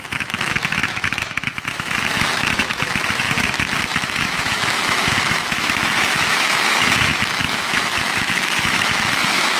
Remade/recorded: remade